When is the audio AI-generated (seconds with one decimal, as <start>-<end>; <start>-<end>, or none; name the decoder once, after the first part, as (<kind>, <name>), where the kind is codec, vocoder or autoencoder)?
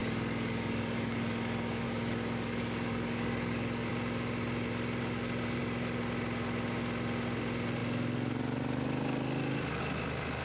0.0-3.9 (codec, DAC)